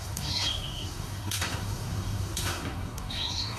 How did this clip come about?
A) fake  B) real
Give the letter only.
A